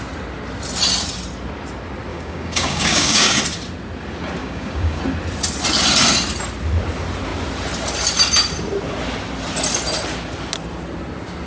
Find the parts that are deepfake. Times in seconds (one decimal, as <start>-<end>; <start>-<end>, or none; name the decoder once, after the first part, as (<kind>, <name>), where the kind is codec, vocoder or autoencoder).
2.1-3.4 (codec, DAC); 4.4-5.0